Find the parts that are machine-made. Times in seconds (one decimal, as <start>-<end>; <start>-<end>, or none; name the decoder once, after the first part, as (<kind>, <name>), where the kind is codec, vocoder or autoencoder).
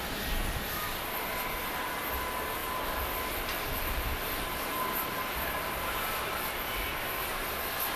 2.6-7.0 (vocoder, BigVGAN v2)